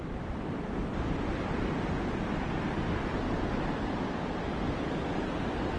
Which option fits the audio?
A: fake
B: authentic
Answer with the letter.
B